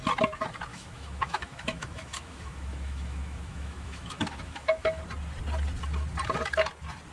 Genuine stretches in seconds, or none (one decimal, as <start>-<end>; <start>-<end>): 0.0-0.7; 5.0-7.1